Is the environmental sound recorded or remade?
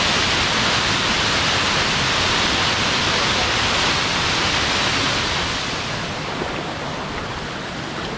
recorded